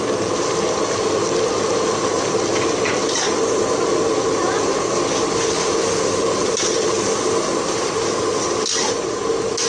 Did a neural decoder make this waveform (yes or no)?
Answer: no